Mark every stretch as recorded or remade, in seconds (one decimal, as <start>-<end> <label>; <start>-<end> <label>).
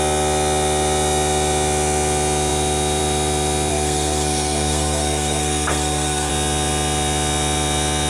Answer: 0.0-3.7 recorded; 3.7-6.3 remade; 6.3-8.1 recorded